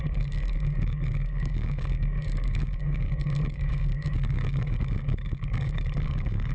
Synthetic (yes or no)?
yes